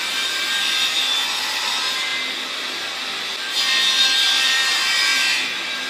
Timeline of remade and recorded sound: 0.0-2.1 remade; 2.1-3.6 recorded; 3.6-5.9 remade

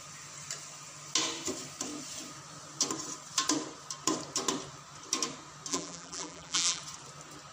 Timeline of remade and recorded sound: 0.0-5.7 recorded; 5.7-6.8 remade; 6.8-7.5 recorded

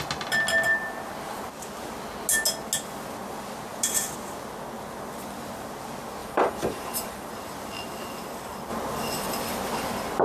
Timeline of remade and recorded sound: 0.0-6.2 recorded; 6.2-7.3 remade; 7.3-10.2 recorded

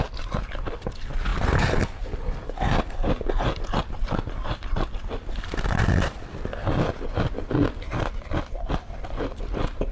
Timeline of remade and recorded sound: 0.0-9.9 recorded

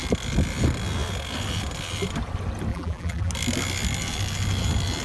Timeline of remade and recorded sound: 0.0-2.7 recorded; 2.7-3.3 remade; 3.3-5.0 recorded

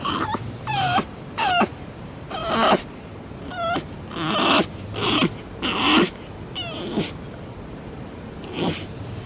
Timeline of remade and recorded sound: 0.0-2.4 remade; 2.4-7.7 recorded; 7.7-9.3 remade

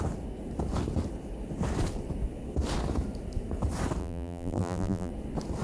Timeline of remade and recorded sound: 0.0-4.0 recorded; 4.0-5.1 remade; 5.1-5.6 recorded

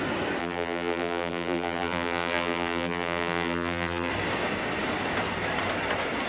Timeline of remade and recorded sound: 0.0-0.4 recorded; 0.4-4.1 remade; 4.1-6.3 recorded